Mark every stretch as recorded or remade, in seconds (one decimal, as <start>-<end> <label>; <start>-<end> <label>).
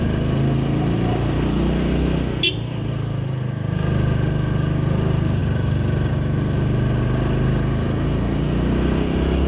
0.0-5.4 recorded; 5.4-6.1 remade; 6.1-9.5 recorded